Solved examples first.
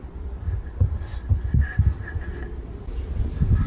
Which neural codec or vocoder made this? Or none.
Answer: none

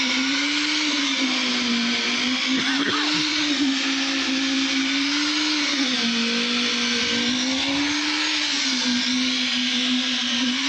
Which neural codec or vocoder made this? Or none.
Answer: none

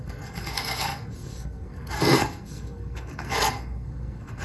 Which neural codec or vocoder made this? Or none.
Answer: codec, SNAC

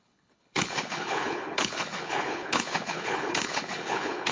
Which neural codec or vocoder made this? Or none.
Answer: codec, HILCodec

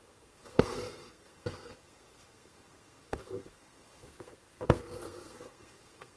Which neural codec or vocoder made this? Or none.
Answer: codec, SNAC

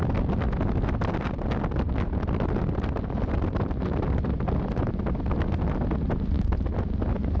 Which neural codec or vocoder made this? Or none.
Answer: none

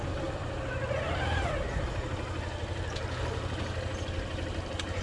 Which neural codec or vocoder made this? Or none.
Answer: none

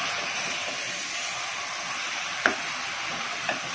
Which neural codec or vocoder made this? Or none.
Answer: none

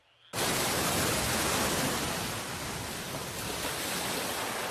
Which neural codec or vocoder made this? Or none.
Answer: none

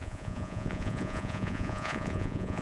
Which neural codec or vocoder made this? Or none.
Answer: vocoder, Vocos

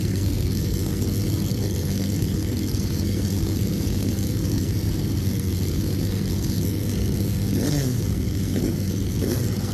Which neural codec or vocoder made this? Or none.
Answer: codec, SNAC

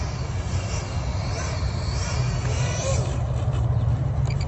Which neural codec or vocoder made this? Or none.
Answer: none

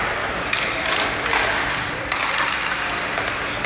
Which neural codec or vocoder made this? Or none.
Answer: none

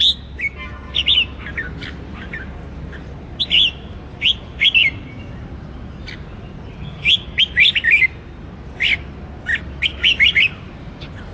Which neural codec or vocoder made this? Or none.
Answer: none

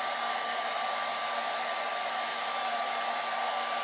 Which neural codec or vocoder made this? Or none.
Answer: none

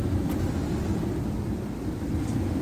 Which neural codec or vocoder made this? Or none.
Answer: none